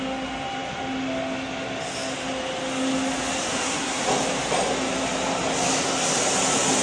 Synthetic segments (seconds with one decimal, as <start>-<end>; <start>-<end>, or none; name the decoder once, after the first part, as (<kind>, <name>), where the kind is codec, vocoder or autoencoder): 3.5-4.0 (codec, SNAC)